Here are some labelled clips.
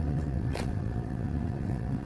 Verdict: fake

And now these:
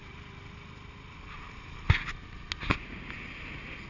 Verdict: real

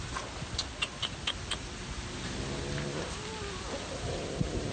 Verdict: real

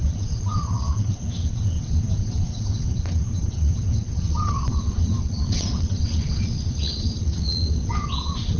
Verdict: fake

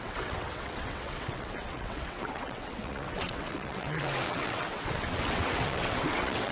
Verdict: fake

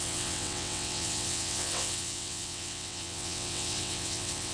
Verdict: fake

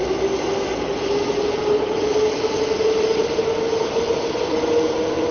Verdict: real